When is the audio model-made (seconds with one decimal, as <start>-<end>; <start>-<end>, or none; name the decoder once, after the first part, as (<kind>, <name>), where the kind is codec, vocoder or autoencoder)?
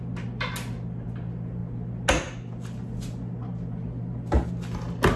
none